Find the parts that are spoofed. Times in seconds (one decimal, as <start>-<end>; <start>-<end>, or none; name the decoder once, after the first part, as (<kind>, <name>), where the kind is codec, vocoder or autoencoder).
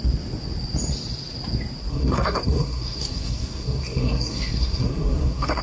1.9-5.6 (codec, SNAC)